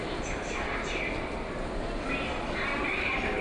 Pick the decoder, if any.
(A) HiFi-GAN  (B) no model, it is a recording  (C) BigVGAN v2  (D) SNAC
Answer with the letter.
B